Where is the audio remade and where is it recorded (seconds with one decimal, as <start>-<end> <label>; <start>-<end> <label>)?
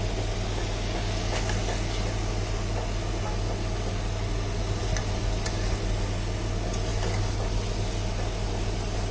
0.0-9.1 recorded